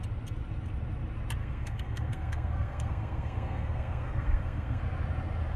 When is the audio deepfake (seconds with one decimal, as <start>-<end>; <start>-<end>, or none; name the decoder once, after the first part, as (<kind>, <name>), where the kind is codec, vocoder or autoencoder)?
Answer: 1.4-4.8 (codec, SNAC)